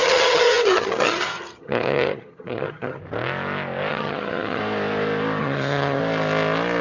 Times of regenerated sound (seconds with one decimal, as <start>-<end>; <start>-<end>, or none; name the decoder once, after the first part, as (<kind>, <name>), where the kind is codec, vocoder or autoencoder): 0.0-3.0 (vocoder, HiFi-GAN); 3.9-4.6; 5.4-6.0